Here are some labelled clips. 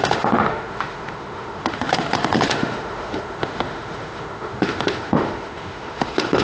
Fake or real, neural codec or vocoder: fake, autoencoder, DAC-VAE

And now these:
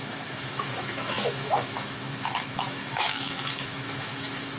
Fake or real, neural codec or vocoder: fake, autoencoder, DAC-VAE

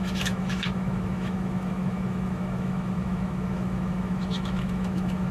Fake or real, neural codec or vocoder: fake, autoencoder, DAC-VAE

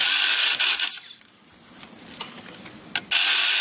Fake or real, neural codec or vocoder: real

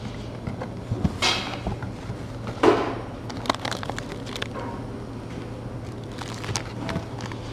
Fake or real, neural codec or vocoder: real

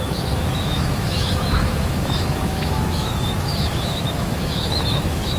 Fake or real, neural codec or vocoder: fake, autoencoder, DAC-VAE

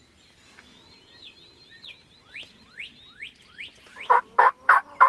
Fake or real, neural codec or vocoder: real